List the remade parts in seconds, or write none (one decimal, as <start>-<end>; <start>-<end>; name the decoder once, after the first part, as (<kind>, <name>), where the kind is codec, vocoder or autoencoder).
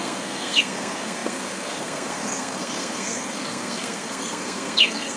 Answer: 0.0-5.2 (codec, SNAC)